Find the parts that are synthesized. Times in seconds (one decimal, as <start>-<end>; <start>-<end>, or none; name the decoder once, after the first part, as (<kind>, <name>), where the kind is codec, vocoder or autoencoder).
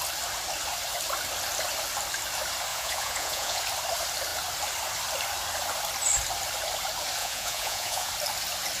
2.7-3.6 (vocoder, Vocos); 7.2-8.1